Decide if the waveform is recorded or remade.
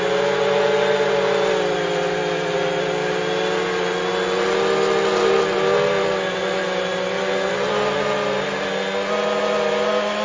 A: recorded